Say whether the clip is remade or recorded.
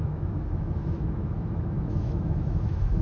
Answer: remade